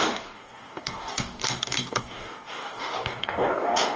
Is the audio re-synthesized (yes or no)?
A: yes